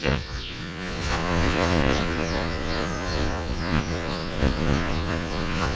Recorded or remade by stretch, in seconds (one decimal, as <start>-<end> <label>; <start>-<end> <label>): 0.0-5.7 remade